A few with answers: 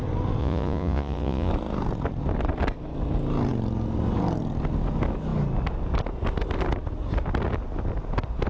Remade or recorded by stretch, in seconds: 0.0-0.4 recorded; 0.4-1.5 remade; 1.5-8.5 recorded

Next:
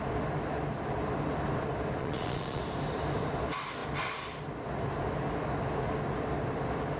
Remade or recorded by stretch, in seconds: 0.0-2.0 recorded; 2.0-2.6 remade; 2.6-7.0 recorded

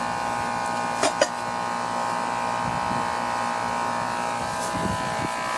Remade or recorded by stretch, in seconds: 0.0-5.6 recorded